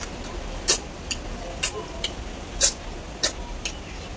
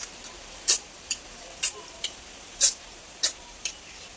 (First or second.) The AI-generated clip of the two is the second